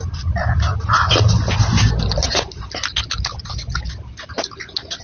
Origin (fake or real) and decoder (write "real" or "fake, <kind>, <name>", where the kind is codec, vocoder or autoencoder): real